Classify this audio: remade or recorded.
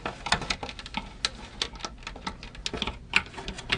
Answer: recorded